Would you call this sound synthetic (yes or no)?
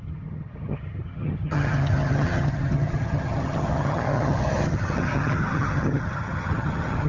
yes